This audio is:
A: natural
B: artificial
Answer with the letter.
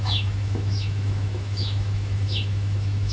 B